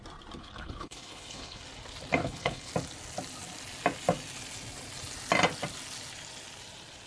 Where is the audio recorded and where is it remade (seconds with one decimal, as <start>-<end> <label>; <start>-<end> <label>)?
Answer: 0.0-0.4 recorded; 0.4-1.6 remade; 1.6-2.2 recorded; 2.2-2.7 remade; 2.7-7.1 recorded